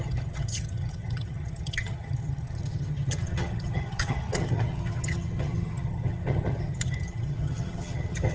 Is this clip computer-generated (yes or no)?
yes